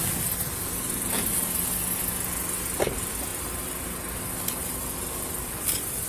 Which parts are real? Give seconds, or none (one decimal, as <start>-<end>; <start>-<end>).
0.0-6.1

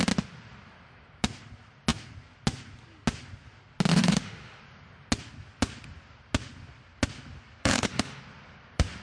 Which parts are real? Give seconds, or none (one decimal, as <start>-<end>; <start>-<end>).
0.0-3.9; 4.6-7.6; 8.2-9.0

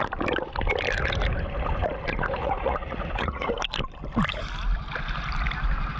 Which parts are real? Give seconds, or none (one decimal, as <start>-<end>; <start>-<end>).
0.0-2.4; 3.5-6.0

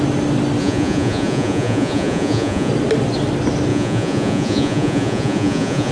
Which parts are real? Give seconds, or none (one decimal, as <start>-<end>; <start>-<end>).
0.0-0.6; 2.7-3.7

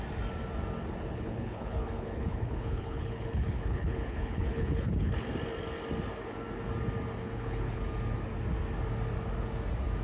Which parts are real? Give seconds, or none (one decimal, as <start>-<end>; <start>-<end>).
0.0-1.1; 5.1-7.2; 7.8-10.0

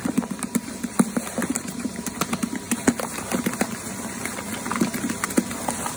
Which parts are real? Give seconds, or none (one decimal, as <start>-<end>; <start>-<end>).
0.0-1.4; 2.3-6.0

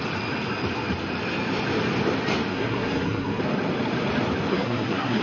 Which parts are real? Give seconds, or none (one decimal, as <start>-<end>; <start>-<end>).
0.0-2.5; 3.4-4.5